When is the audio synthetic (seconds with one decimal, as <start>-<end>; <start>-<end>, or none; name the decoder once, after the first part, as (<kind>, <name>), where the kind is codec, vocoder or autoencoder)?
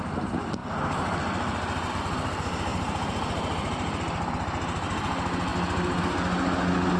none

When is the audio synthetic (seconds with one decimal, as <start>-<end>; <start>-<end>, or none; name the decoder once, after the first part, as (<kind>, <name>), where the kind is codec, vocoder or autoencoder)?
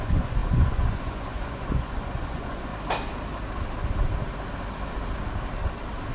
0.0-2.7 (vocoder, Vocos)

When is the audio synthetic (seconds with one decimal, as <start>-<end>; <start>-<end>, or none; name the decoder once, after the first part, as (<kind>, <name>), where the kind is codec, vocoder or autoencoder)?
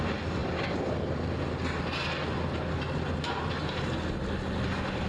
none